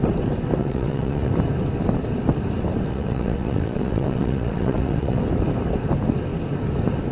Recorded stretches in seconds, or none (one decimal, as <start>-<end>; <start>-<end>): 0.0-0.6; 1.3-2.9; 5.2-7.1